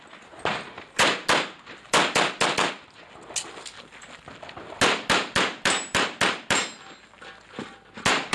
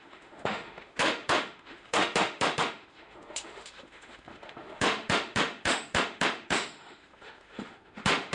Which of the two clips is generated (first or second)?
second